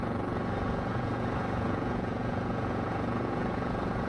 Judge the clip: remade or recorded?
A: remade